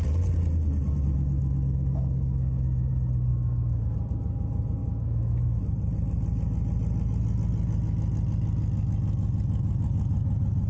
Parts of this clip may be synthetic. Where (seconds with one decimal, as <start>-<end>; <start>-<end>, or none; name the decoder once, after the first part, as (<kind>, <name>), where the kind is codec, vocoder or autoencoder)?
1.4-2.9 (autoencoder, DAC-VAE); 3.3-3.8; 4.8-5.6